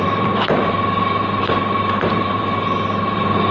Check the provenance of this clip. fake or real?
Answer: fake